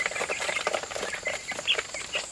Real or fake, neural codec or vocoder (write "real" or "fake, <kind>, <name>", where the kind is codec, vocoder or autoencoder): real